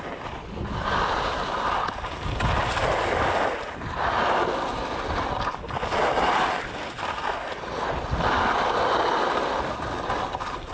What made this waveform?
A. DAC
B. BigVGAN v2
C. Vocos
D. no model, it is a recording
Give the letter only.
D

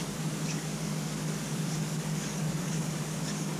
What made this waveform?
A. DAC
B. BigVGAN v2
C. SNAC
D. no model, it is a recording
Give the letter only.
A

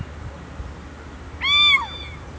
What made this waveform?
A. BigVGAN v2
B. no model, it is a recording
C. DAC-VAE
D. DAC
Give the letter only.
B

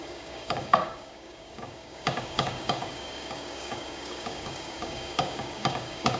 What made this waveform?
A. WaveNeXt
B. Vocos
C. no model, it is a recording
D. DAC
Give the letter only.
D